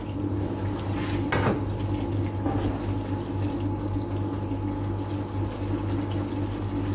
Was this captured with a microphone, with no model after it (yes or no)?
yes